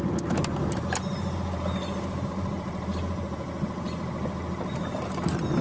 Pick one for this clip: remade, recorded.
recorded